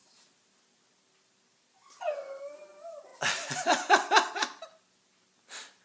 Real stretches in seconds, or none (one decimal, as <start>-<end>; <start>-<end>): 0.0-2.1